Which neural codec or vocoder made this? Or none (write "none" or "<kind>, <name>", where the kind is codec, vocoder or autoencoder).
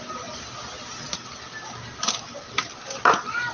none